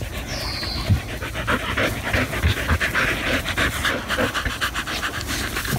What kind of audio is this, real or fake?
real